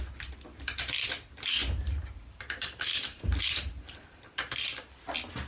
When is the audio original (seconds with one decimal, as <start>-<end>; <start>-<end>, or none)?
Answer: 0.0-1.6; 4.2-5.5